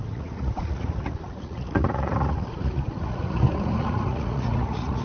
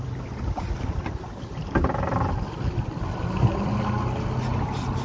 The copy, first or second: first